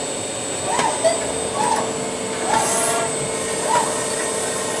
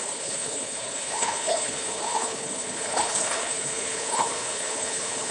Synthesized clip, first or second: second